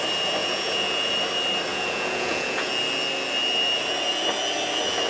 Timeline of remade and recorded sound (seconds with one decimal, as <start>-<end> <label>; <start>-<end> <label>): 0.0-0.4 recorded; 0.4-1.1 remade; 1.1-1.7 recorded; 1.7-2.7 remade; 2.7-5.1 recorded